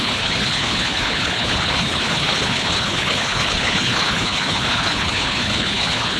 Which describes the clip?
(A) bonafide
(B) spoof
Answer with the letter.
B